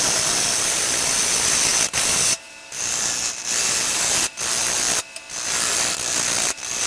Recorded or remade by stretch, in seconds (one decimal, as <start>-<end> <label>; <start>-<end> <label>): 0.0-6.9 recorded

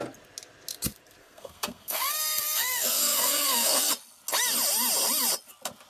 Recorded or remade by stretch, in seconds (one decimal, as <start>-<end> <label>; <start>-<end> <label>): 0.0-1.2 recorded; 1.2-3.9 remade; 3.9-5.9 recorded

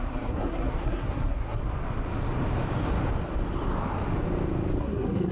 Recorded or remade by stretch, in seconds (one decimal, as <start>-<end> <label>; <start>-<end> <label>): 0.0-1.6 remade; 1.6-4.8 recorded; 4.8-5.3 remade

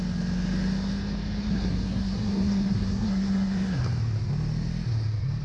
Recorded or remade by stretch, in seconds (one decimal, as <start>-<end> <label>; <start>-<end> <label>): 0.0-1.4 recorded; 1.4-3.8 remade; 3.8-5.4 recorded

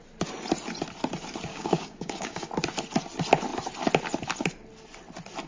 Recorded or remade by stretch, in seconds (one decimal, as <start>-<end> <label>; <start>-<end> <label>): 0.0-1.5 recorded; 1.5-2.5 remade; 2.5-5.5 recorded